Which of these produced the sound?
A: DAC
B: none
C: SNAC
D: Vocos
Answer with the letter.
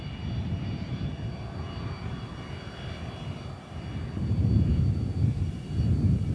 B